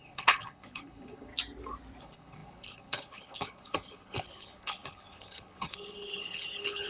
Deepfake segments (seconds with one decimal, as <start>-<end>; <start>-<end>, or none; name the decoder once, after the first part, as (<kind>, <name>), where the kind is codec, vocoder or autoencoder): 0.0-1.3 (codec, HILCodec); 2.0-6.9